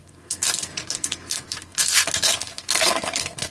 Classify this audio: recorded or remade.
remade